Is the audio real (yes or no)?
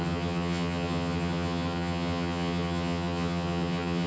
no